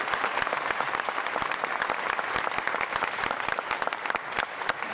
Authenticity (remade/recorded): recorded